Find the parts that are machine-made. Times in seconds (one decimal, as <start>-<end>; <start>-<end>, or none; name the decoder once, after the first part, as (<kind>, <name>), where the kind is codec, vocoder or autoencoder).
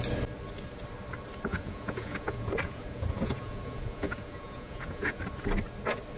1.5-5.2 (vocoder, Vocos)